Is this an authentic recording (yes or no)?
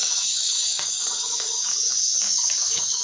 no